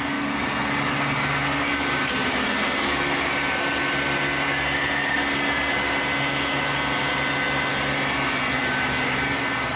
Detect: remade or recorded recorded